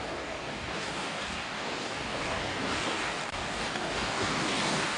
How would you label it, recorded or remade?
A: remade